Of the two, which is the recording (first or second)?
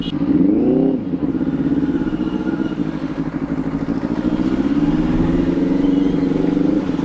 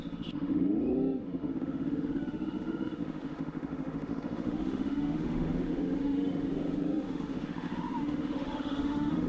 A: first